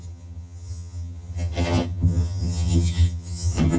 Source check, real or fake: fake